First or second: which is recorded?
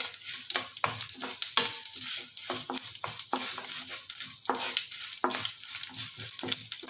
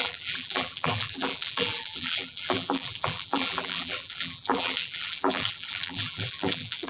first